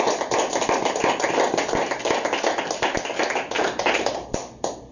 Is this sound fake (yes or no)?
no